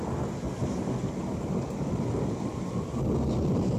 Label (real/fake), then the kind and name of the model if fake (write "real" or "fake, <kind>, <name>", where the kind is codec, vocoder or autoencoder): real